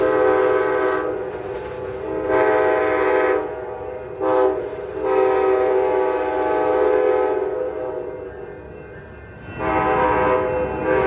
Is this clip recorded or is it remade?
recorded